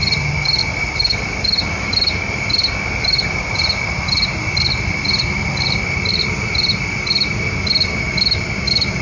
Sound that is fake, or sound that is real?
real